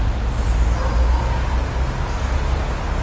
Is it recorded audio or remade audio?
recorded